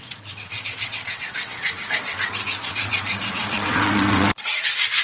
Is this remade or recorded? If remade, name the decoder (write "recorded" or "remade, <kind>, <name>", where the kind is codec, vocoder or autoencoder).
remade, vocoder, WaveNeXt